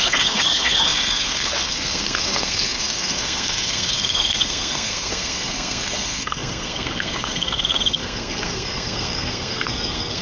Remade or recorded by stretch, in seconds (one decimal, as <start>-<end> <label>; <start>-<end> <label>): 0.0-10.2 remade